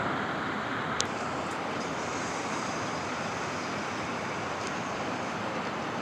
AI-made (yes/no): yes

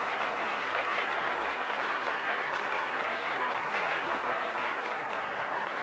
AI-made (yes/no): yes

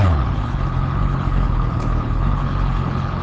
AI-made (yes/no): yes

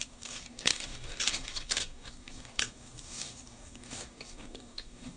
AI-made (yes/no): yes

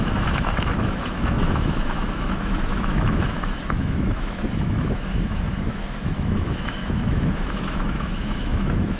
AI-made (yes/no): yes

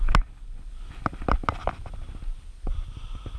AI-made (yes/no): no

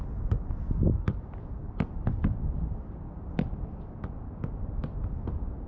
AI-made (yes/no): no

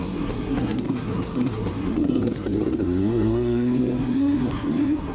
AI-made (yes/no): yes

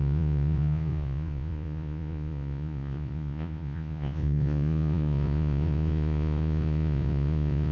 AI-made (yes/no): yes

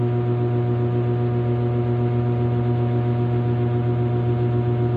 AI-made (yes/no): no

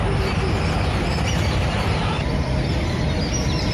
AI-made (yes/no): no